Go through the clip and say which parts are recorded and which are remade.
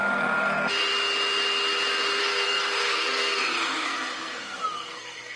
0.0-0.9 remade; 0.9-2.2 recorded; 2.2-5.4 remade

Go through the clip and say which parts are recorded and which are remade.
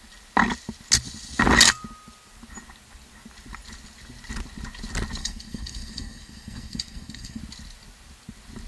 0.0-5.2 recorded; 5.2-7.4 remade; 7.4-8.7 recorded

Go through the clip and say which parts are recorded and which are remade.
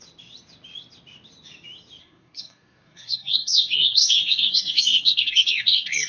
0.0-2.0 recorded; 2.0-6.1 remade